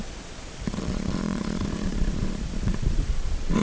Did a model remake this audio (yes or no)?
yes